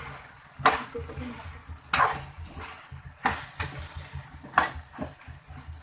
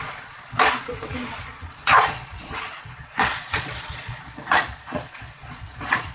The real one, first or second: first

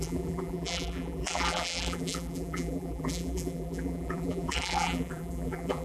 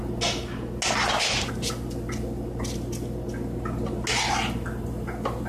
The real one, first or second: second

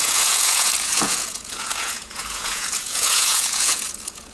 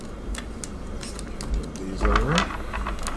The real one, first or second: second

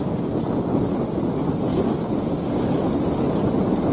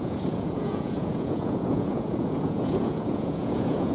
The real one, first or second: first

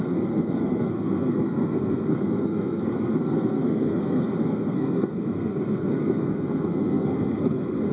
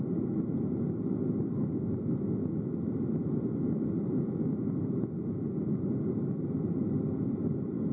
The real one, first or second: second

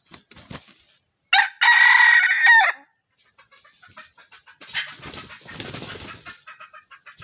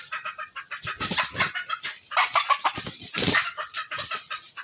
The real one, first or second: first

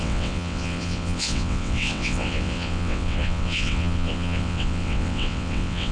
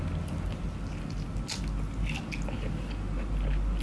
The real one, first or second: second